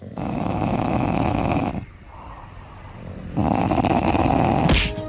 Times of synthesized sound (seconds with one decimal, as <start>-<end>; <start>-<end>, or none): 0.0-1.7